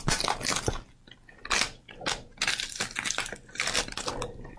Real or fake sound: real